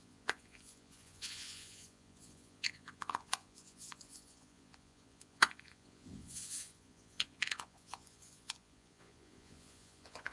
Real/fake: fake